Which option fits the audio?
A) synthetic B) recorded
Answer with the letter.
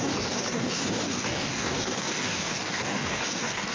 A